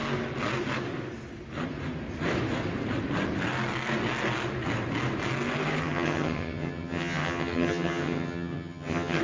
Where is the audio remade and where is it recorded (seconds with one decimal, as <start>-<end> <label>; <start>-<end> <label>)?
0.0-5.8 recorded; 5.8-9.2 remade